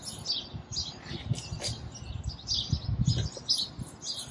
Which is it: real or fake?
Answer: real